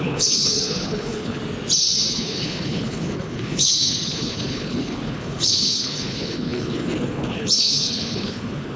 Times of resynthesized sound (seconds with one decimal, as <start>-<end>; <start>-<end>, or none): 0.0-1.4; 2.1-8.8